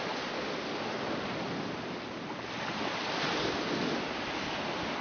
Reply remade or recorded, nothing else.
recorded